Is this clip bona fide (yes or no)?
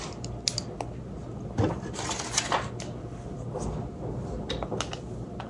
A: yes